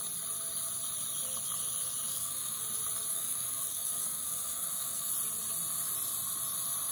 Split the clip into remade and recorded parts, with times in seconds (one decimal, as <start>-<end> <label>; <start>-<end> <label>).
0.0-2.1 recorded; 2.1-2.6 remade; 2.6-3.1 recorded; 3.1-5.1 remade; 5.1-6.9 recorded